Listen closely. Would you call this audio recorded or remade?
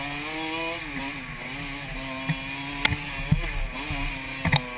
recorded